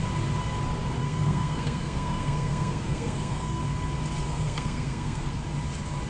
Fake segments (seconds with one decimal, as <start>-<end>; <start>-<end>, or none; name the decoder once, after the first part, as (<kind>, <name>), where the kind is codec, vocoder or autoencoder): 1.0-3.6 (codec, SNAC); 4.2-5.3